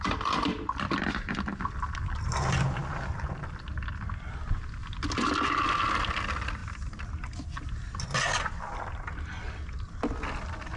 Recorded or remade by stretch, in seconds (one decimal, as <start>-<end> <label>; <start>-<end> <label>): 0.0-10.8 recorded